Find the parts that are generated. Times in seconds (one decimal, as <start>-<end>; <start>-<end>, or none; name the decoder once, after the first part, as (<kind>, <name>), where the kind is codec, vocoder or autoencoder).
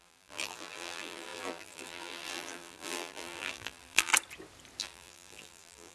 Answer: 0.0-4.1 (vocoder, BigVGAN v2); 4.8-5.9